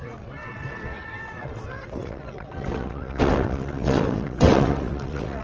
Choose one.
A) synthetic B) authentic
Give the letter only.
A